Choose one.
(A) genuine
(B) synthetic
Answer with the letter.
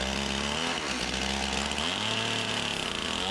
A